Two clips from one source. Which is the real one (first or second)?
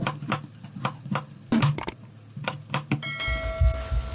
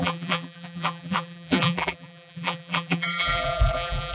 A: first